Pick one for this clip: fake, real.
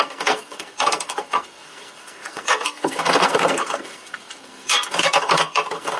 fake